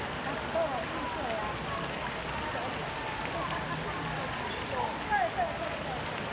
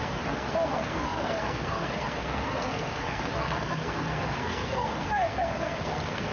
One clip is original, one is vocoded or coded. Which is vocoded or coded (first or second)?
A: second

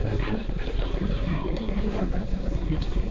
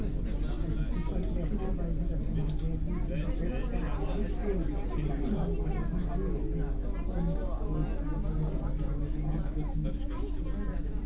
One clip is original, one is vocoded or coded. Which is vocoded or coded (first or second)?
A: first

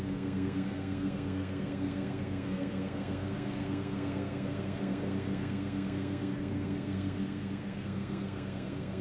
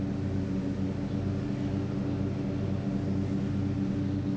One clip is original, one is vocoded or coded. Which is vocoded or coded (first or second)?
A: first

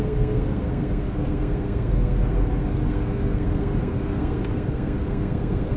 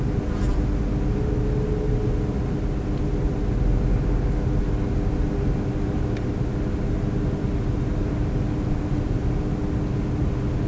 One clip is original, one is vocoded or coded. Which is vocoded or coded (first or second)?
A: first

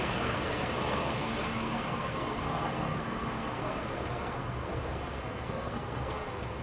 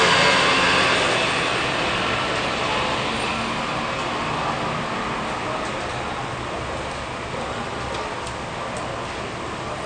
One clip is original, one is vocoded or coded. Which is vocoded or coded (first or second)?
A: first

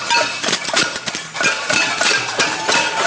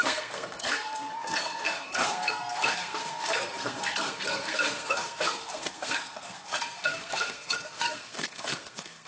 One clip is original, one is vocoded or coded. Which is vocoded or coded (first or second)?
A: second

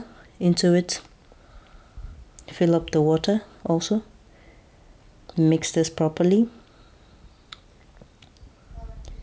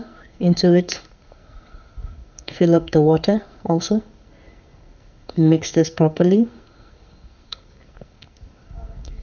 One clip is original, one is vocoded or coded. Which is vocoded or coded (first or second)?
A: second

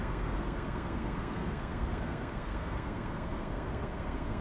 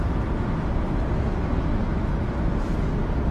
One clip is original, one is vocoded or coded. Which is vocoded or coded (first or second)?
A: first